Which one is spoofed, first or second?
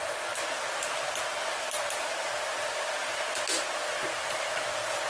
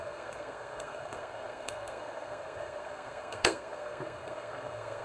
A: second